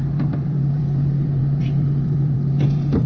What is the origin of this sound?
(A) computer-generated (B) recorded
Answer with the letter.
A